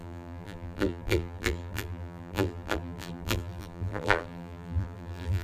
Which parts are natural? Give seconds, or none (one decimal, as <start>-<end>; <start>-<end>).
none